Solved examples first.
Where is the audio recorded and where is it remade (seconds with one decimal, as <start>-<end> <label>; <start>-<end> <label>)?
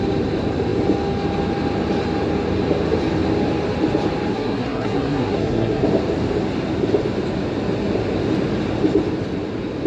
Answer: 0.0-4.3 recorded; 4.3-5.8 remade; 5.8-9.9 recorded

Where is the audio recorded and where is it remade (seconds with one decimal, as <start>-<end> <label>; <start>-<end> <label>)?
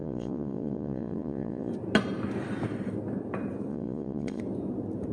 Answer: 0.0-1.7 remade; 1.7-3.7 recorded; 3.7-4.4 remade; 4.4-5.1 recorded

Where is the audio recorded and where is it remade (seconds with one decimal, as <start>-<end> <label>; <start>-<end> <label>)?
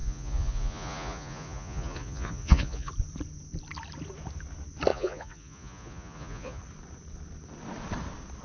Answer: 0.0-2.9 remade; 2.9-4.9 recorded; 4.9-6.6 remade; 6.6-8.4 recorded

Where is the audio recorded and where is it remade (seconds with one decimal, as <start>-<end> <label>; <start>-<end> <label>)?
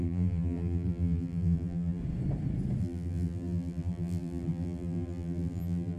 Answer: 0.0-2.0 remade; 2.0-2.8 recorded; 2.8-6.0 remade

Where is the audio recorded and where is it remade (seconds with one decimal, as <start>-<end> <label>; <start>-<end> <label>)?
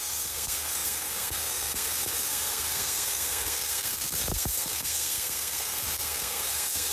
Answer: 0.0-6.9 remade